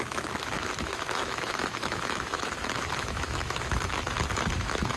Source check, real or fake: fake